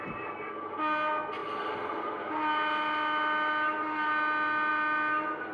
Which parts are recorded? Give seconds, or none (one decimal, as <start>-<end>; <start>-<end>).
0.0-5.5